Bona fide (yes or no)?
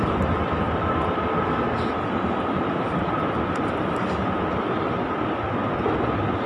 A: yes